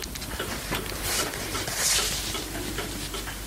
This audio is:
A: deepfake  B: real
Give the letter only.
B